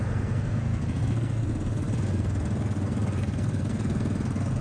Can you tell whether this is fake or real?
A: fake